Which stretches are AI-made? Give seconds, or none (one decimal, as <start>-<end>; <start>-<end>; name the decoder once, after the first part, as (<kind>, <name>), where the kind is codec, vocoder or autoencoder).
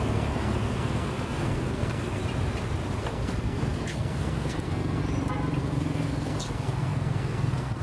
0.0-2.2 (codec, SNAC); 3.0-5.0; 5.6-7.8